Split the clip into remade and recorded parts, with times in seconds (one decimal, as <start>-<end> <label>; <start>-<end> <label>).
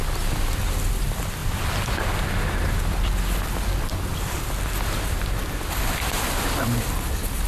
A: 0.0-7.5 recorded